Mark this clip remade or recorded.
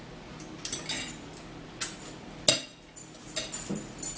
recorded